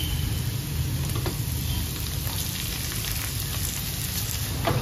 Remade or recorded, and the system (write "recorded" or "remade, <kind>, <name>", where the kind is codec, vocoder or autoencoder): recorded